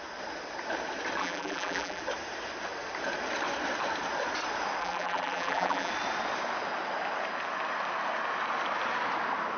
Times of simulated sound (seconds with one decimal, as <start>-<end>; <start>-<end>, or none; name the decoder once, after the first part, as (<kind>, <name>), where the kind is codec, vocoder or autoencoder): 1.2-2.0 (vocoder, BigVGAN v2); 4.8-5.9